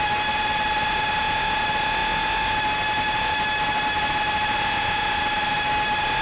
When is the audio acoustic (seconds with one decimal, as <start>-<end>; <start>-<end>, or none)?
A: 0.0-6.2